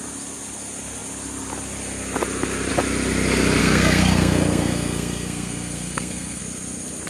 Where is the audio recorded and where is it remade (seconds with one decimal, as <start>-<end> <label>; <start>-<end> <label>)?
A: 0.0-3.6 recorded; 3.6-6.4 remade; 6.4-7.1 recorded